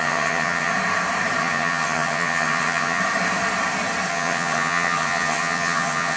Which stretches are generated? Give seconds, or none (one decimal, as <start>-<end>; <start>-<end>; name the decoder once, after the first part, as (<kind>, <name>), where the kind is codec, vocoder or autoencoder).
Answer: 0.0-0.7 (vocoder, HiFi-GAN); 1.4-3.0; 4.1-6.2